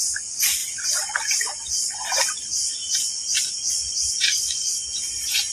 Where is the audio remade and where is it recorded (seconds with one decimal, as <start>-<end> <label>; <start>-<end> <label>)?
0.0-4.3 recorded; 4.3-4.8 remade; 4.8-5.5 recorded